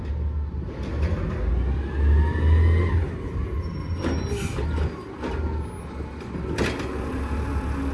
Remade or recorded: recorded